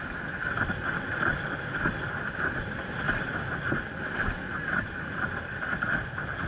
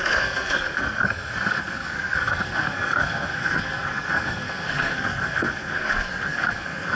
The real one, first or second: first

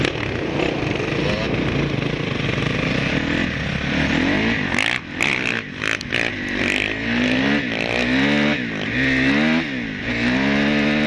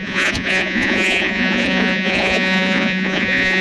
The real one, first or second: first